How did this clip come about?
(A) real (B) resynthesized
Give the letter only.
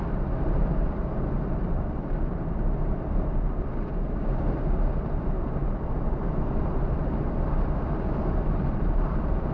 B